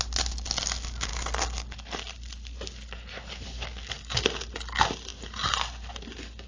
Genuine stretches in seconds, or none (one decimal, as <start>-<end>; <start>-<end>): 0.0-6.5